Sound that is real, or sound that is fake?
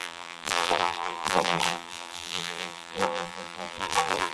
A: fake